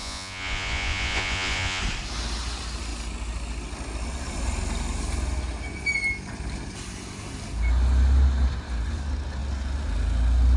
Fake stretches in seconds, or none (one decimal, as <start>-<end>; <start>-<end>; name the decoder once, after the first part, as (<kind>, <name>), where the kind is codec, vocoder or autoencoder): 0.0-1.8 (vocoder, Vocos)